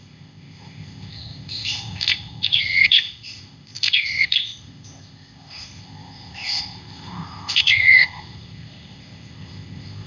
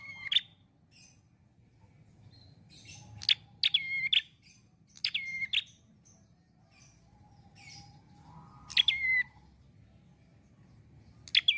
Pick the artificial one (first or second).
first